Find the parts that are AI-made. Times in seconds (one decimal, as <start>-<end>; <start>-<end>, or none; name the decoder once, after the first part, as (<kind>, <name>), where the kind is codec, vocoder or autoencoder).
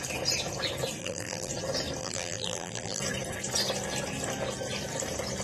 1.0-1.5 (vocoder, BigVGAN v2); 2.0-3.0